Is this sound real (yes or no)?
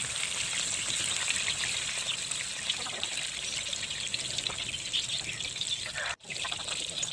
yes